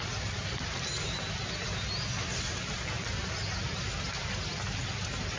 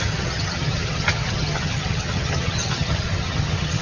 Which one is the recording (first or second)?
first